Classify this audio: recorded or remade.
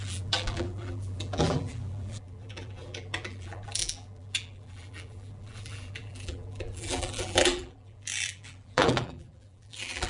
remade